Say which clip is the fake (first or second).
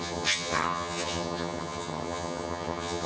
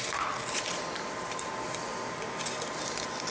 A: first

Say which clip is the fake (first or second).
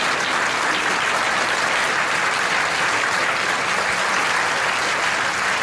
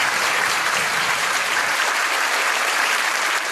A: second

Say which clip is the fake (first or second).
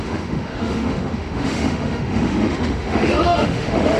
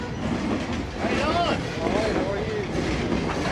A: first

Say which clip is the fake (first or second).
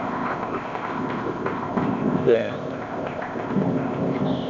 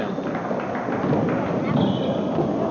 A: first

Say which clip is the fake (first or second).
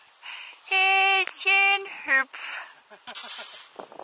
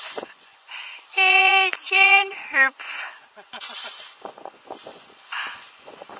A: second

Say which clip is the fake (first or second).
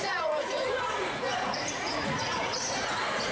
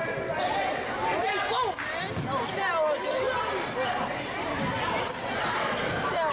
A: first